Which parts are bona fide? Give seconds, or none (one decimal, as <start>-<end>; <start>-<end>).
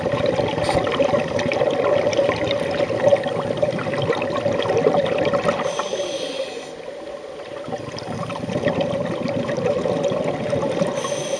0.0-11.4